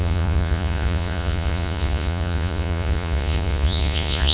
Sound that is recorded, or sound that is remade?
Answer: remade